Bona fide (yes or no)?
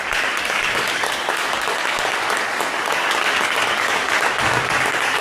no